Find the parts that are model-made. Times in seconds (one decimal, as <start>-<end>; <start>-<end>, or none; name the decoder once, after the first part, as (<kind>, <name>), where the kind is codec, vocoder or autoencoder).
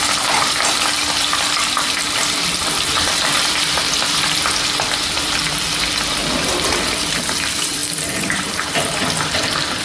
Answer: 0.0-6.2 (vocoder, BigVGAN v2); 6.9-9.8